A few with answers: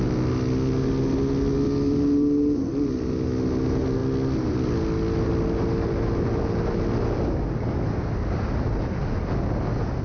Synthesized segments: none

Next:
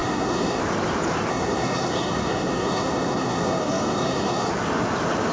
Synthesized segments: 0.0-0.6 (codec, SNAC); 1.3-4.5